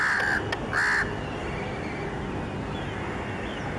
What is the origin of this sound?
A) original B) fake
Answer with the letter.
A